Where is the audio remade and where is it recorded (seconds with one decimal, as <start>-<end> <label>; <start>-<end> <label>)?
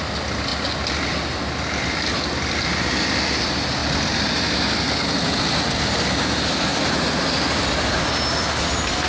0.0-9.1 recorded